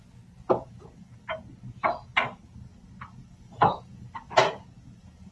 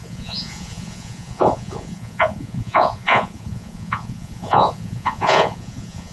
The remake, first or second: second